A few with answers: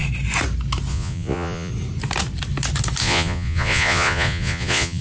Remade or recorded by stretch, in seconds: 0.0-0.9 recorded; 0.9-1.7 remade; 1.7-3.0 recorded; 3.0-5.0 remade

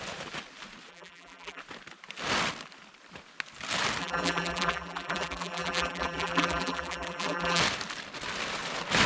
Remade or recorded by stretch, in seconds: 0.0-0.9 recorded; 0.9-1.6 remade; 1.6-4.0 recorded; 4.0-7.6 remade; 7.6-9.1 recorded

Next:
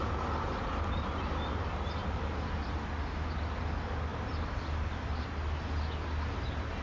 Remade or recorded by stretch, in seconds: 0.0-6.8 recorded

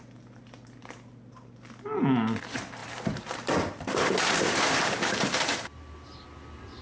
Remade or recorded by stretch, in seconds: 0.0-2.8 recorded; 2.8-5.8 remade; 5.8-6.8 recorded

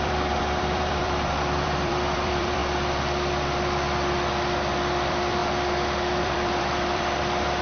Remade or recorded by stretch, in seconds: 0.0-2.6 remade; 2.6-4.4 recorded; 4.4-5.4 remade; 5.4-6.2 recorded; 6.2-7.6 remade

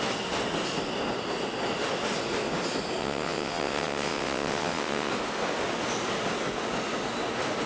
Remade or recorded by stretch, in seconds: 0.0-3.0 recorded; 3.0-5.1 remade; 5.1-7.7 recorded

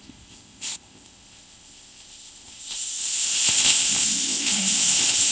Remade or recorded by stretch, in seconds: 0.0-5.3 remade